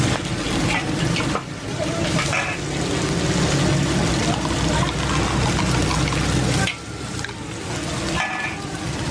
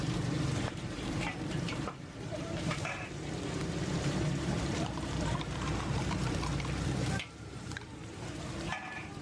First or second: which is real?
first